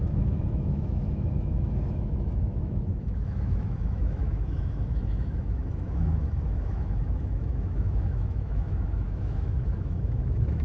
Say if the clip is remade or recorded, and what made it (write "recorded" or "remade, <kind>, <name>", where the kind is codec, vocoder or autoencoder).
remade, autoencoder, DAC-VAE